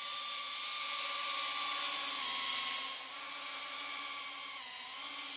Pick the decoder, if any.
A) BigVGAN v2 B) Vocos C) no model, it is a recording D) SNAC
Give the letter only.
C